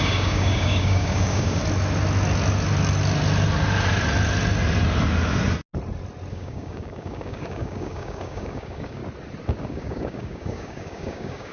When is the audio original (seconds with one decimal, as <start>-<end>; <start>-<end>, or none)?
1.6-6.3; 9.0-9.6